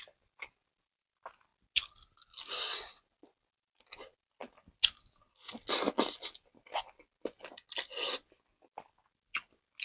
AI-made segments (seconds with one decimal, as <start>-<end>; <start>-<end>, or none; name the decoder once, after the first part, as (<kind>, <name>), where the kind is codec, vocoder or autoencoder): none